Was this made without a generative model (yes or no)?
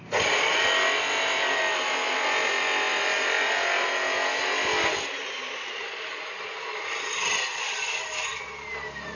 yes